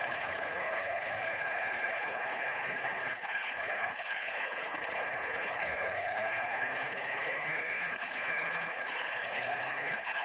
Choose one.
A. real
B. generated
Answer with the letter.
B